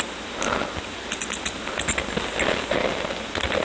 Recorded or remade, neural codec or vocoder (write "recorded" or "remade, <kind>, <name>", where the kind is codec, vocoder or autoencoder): recorded